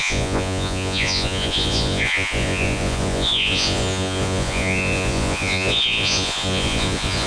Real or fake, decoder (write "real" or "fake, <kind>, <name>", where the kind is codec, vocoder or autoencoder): fake, vocoder, Vocos